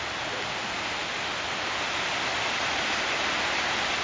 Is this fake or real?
real